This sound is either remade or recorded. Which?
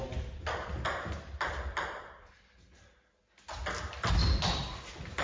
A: recorded